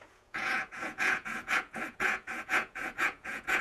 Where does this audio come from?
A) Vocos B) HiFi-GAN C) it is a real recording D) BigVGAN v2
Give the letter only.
A